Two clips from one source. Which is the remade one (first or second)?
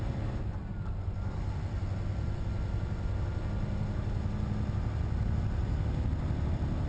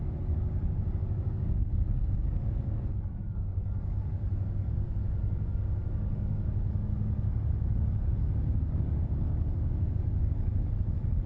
second